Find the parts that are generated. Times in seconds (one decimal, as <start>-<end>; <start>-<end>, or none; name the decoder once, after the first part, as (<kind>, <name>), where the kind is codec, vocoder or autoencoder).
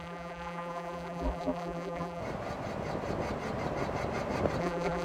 0.0-2.2 (vocoder, BigVGAN v2); 4.6-5.0